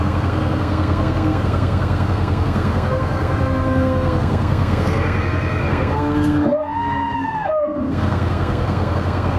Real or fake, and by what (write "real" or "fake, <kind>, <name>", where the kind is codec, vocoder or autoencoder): fake, codec, SNAC